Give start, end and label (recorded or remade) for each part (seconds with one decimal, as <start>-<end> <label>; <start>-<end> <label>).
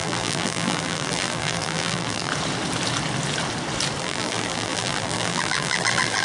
0.0-2.3 remade; 2.3-4.0 recorded; 4.0-6.2 remade